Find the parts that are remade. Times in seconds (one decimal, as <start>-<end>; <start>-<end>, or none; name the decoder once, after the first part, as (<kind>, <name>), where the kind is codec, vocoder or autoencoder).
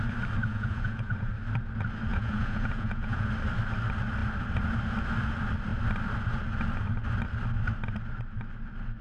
0.5-1.3 (vocoder, Vocos); 2.1-3.3